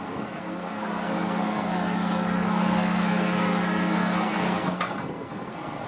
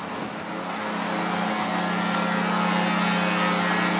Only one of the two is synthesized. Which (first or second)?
first